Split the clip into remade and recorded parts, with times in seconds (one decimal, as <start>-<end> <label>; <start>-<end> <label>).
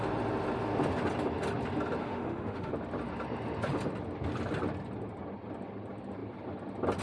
0.0-2.0 recorded; 2.0-2.7 remade; 2.7-7.0 recorded